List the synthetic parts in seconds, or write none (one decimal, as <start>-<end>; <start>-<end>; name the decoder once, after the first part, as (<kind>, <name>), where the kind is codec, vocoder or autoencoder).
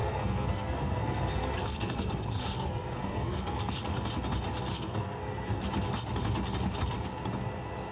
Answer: 0.0-4.1 (codec, SNAC); 4.7-5.6